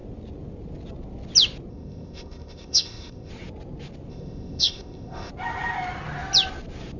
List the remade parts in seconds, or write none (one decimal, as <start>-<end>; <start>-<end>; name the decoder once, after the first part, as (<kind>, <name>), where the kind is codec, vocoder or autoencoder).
1.7-3.3 (codec, ZipCodec); 4.1-5.3